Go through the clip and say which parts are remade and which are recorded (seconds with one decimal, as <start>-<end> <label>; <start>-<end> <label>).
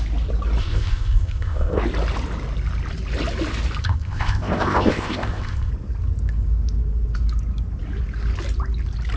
0.0-0.6 recorded; 0.6-1.8 remade; 1.8-3.8 recorded; 3.8-5.7 remade; 5.7-9.2 recorded